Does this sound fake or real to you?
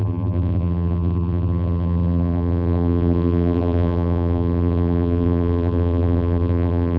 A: fake